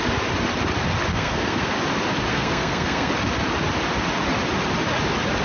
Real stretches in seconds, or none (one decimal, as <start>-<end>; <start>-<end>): 0.0-1.1; 1.8-2.3; 3.1-5.4